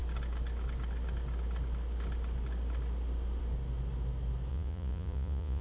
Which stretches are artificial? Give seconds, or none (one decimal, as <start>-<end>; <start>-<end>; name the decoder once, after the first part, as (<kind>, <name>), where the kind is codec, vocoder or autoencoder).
4.5-5.6 (vocoder, Vocos)